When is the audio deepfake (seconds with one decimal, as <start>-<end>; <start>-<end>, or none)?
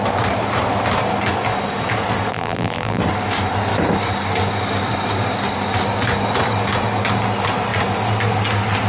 2.3-3.0